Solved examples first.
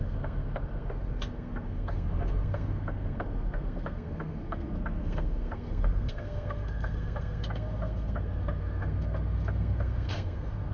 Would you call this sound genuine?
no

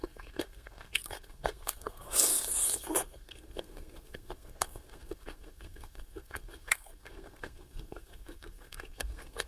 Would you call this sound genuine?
no